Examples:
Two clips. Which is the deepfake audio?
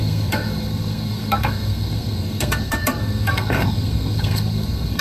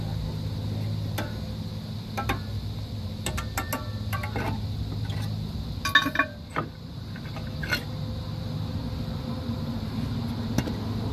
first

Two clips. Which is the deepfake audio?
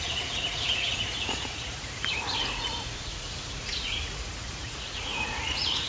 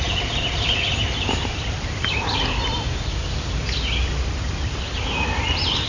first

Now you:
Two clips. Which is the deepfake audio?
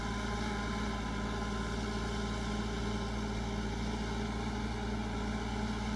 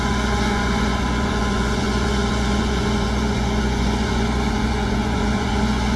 second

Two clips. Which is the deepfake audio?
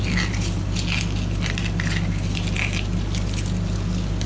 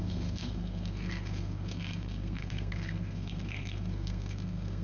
second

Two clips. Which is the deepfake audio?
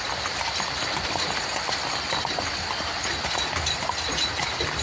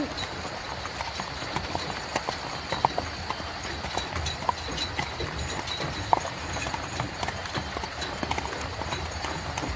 first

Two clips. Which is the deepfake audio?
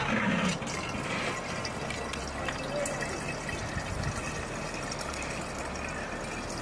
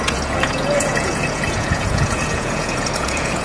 second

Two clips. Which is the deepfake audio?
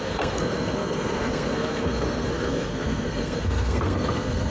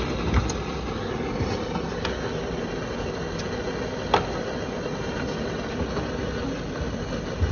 first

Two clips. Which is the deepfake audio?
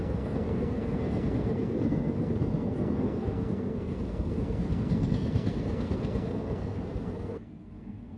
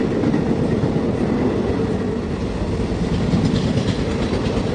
first